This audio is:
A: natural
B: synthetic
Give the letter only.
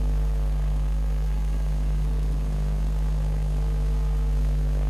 B